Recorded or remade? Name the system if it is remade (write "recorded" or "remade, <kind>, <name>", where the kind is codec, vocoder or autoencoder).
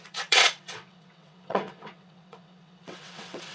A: remade, vocoder, WaveNeXt